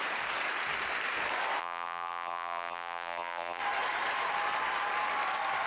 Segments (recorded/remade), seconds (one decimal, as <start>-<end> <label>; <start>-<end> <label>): 0.0-1.6 recorded; 1.6-3.6 remade; 3.6-5.7 recorded